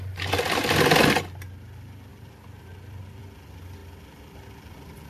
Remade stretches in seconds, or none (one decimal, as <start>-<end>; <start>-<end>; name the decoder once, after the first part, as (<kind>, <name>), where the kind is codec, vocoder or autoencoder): 2.1-3.2 (vocoder, BigVGAN v2)